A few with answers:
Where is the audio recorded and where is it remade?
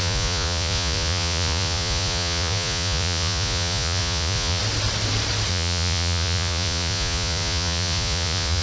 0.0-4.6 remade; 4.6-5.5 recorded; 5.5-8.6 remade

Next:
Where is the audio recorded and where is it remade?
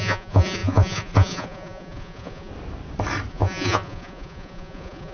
0.0-2.5 remade; 2.5-3.3 recorded; 3.3-5.1 remade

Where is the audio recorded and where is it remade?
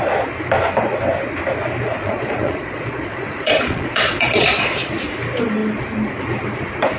0.0-2.0 recorded; 2.0-4.9 remade; 4.9-7.0 recorded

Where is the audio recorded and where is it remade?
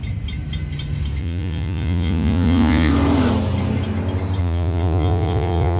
0.0-1.2 recorded; 1.2-2.9 remade; 2.9-4.4 recorded; 4.4-5.8 remade